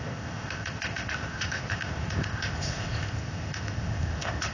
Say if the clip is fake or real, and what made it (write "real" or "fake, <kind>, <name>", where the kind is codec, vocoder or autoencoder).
fake, codec, ZipCodec